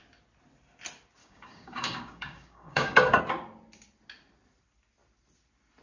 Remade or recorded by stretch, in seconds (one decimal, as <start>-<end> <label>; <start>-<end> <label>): 0.0-1.2 recorded; 1.2-3.2 remade; 3.2-5.8 recorded

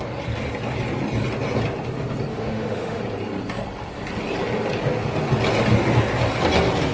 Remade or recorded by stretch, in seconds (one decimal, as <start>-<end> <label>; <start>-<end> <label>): 0.0-2.3 recorded; 2.3-3.0 remade; 3.0-6.9 recorded

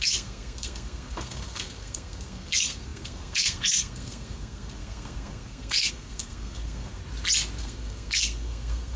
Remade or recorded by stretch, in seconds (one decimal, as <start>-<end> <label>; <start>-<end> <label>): 0.0-7.0 remade; 7.0-7.6 recorded; 7.6-9.0 remade

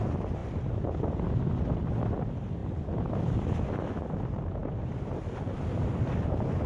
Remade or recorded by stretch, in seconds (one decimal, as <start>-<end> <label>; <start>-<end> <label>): 0.0-6.7 recorded

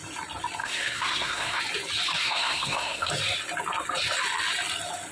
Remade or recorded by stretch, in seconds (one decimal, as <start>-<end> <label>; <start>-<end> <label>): 0.0-0.6 recorded; 0.6-1.6 remade; 1.6-2.2 recorded; 2.2-3.1 remade; 3.1-5.1 recorded